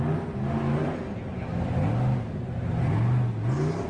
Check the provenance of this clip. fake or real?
real